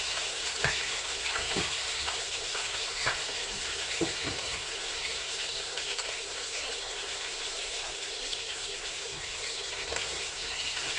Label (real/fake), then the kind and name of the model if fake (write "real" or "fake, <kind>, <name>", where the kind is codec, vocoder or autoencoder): fake, codec, SNAC